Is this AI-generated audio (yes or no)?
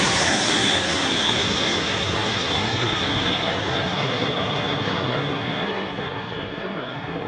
yes